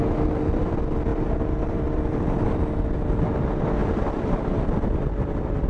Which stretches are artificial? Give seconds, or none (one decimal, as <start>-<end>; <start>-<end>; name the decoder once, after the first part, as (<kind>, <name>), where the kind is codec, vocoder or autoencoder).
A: 1.1-2.8 (vocoder, BigVGAN v2); 3.8-5.0